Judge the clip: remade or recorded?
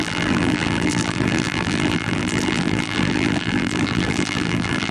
remade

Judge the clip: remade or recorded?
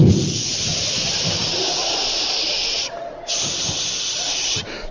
recorded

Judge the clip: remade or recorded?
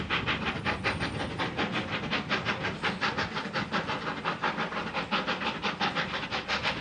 recorded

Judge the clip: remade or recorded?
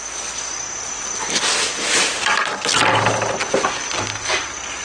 recorded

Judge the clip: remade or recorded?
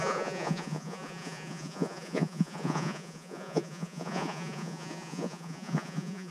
remade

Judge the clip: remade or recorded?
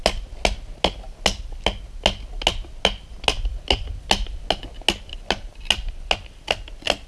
recorded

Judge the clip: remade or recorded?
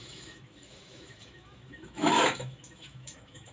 remade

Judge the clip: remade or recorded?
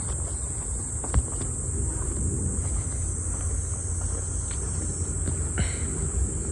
recorded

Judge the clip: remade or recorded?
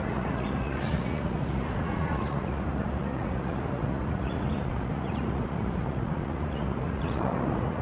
remade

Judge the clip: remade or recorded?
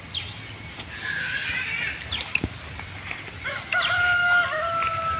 recorded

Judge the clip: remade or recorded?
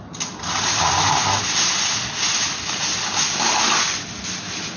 recorded